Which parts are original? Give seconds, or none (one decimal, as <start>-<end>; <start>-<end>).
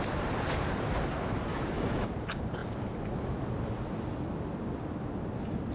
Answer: 0.0-1.5; 2.1-5.7